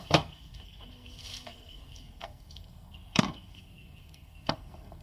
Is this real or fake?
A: fake